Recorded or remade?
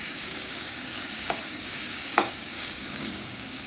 remade